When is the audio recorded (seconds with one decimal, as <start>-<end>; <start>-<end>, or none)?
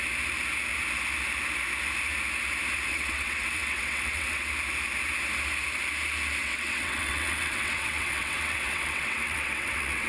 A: 0.0-2.9; 4.5-6.4